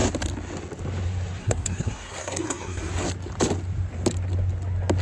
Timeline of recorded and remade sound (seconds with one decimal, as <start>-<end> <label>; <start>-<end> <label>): 0.0-1.4 recorded; 1.4-2.9 remade; 2.9-5.0 recorded